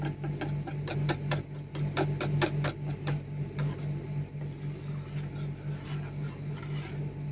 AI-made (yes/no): no